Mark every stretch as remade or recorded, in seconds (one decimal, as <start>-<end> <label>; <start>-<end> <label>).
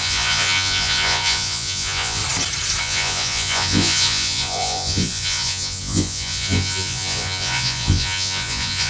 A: 0.0-2.2 remade; 2.2-2.8 recorded; 2.8-8.9 remade